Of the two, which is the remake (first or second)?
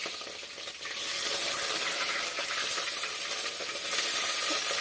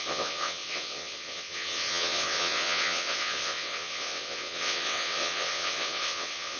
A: second